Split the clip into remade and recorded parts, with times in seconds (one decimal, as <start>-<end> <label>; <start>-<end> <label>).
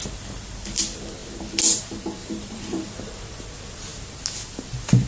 0.0-2.2 recorded; 2.2-3.0 remade; 3.0-5.1 recorded